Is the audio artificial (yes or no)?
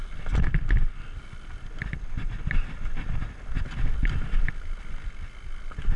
no